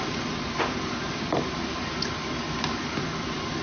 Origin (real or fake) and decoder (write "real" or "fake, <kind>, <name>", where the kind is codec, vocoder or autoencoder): real